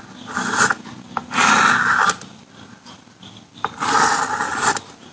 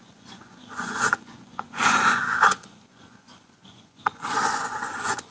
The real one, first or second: first